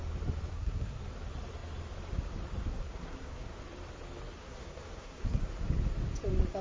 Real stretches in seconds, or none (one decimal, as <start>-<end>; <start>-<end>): 0.0-0.5; 1.0-2.7; 3.6-4.4; 5.4-6.6